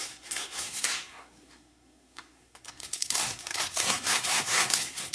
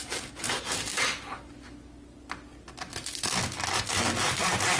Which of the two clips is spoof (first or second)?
first